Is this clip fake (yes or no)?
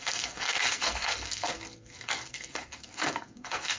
yes